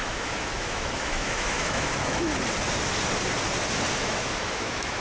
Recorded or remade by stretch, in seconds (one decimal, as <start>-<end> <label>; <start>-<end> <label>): 0.0-2.3 remade; 2.3-4.0 recorded; 4.0-5.0 remade